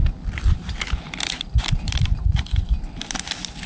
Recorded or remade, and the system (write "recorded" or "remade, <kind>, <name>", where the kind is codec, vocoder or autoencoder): remade, vocoder, BigVGAN v2